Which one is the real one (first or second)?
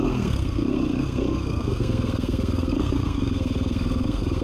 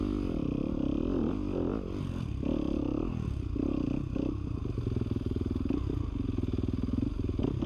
second